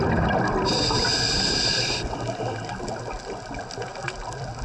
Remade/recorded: recorded